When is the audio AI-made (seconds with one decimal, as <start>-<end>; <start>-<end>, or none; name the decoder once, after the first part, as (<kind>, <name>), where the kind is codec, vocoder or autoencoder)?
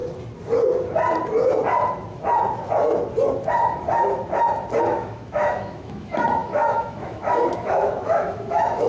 4.8-8.9 (autoencoder, DAC-VAE)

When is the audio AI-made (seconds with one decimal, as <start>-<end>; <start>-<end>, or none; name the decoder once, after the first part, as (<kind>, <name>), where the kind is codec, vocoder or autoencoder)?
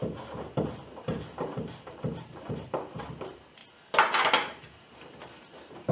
0.6-3.6 (vocoder, BigVGAN v2); 4.2-5.9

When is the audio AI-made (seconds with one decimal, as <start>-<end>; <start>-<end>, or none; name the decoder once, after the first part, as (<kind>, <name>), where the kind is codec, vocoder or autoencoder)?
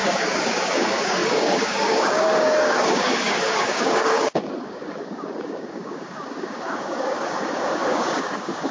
0.0-8.7 (codec, DAC)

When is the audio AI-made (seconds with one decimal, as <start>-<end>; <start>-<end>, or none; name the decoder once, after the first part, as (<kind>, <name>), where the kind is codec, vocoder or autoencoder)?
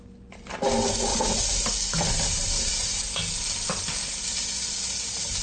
none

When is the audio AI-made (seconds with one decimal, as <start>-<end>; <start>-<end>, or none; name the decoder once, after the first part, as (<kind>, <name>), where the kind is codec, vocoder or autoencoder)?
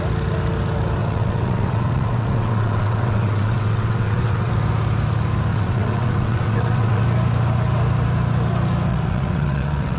1.0-4.5 (vocoder, WaveNeXt); 5.5-7.0; 8.9-10.0